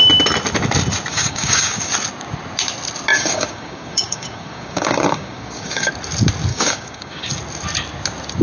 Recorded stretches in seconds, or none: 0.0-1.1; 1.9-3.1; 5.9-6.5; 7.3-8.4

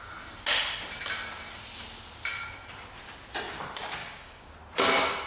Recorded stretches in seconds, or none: 0.0-4.0; 4.5-5.3

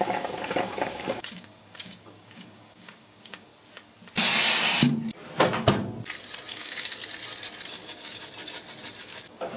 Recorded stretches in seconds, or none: 3.5-6.5; 7.0-7.7; 8.2-9.0

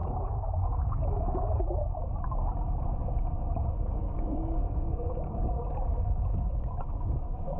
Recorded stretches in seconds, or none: 1.6-3.0

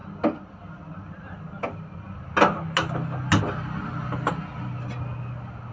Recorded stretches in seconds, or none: 0.0-5.7

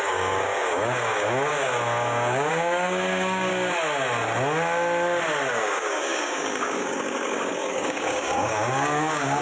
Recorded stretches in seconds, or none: 3.5-5.5